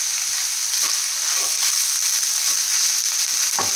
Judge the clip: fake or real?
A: real